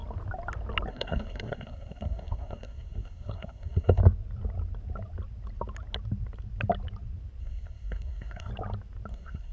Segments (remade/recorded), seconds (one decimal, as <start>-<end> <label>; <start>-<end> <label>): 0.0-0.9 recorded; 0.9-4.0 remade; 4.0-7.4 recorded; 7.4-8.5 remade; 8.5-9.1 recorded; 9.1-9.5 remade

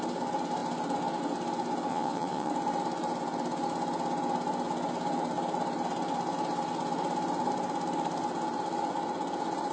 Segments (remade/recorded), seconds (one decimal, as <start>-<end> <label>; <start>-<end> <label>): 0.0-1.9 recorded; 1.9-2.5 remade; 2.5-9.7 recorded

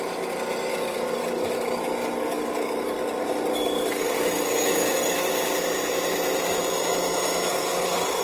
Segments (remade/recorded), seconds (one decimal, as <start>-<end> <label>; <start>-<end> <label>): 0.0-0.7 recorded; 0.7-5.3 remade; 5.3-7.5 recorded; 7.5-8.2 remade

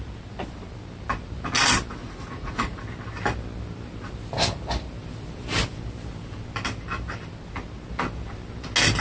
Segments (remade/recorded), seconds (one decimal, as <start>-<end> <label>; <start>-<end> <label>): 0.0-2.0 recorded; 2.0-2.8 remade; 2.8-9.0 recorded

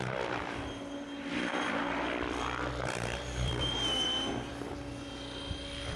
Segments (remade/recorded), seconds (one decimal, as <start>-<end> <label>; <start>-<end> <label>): 0.0-6.0 remade

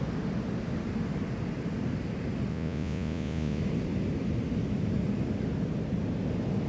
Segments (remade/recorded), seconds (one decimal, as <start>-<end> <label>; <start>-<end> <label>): 0.0-2.5 recorded; 2.5-3.6 remade; 3.6-6.7 recorded

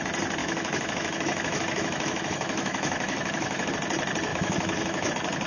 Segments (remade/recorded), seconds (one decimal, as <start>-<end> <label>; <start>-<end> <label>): 0.0-0.4 recorded; 0.4-3.7 remade; 3.7-4.3 recorded; 4.3-5.1 remade; 5.1-5.5 recorded

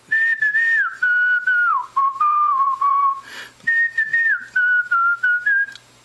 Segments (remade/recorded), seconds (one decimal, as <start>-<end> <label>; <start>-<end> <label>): 0.0-1.7 recorded; 1.7-3.3 remade; 3.3-6.0 recorded